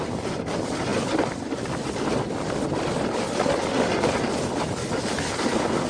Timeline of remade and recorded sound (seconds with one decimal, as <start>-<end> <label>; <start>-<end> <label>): 0.0-5.9 recorded